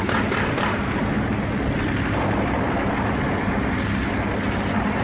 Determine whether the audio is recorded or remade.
recorded